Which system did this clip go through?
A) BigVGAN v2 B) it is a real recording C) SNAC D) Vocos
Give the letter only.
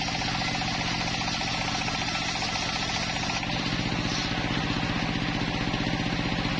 B